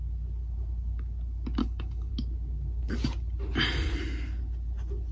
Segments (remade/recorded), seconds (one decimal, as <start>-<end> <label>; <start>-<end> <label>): 0.0-1.6 recorded; 1.6-2.1 remade; 2.1-5.1 recorded